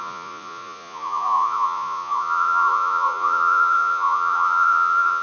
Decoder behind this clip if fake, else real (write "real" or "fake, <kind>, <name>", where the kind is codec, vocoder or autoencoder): fake, vocoder, Vocos